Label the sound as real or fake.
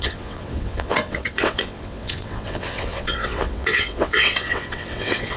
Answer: fake